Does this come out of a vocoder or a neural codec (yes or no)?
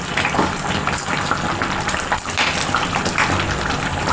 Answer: no